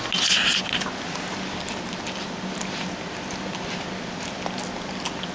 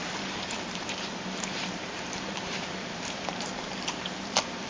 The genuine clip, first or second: first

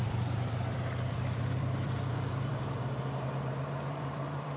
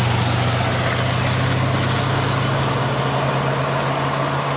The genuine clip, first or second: second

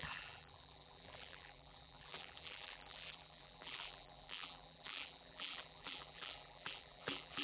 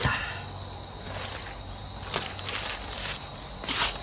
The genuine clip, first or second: second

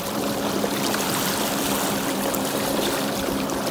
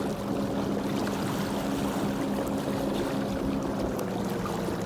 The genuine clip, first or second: second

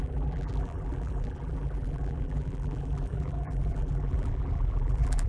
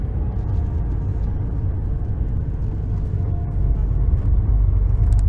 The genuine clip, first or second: second